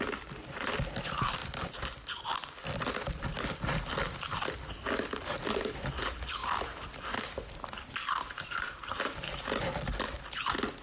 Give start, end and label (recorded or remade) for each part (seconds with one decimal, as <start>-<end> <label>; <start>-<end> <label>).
0.0-1.4 recorded; 1.4-3.9 remade; 3.9-6.4 recorded; 6.4-8.9 remade; 8.9-10.8 recorded

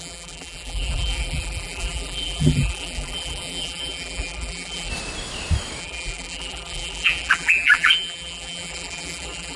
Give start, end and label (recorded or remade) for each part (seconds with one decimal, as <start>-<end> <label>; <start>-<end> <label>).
0.0-4.9 remade; 4.9-5.8 recorded; 5.8-9.6 remade

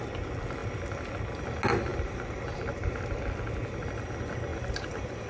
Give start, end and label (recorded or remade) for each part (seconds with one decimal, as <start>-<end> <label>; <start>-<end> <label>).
0.0-1.9 recorded; 1.9-3.2 remade; 3.2-4.5 recorded; 4.5-5.3 remade

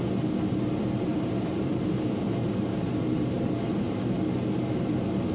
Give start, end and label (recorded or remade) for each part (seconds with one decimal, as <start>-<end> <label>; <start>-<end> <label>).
0.0-1.1 recorded; 1.1-1.7 remade; 1.7-2.3 recorded; 2.3-3.6 remade; 3.6-5.3 recorded

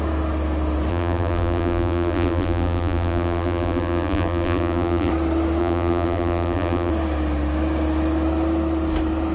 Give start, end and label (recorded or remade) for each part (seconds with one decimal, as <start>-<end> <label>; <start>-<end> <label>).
0.0-0.9 recorded; 0.9-5.1 remade; 5.1-5.6 recorded; 5.6-6.9 remade; 6.9-9.3 recorded

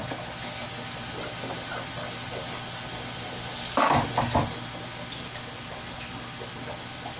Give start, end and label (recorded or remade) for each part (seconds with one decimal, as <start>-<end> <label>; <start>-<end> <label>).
0.0-7.2 recorded